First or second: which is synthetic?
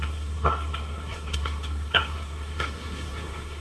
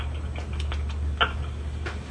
first